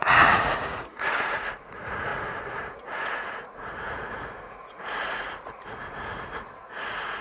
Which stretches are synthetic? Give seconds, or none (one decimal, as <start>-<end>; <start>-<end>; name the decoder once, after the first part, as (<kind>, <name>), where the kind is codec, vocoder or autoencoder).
0.0-7.2 (vocoder, Vocos)